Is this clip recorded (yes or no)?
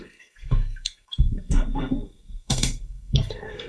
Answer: no